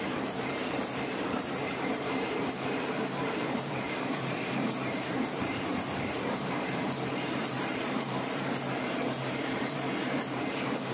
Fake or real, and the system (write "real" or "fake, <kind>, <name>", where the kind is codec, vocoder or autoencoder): fake, vocoder, BigVGAN v2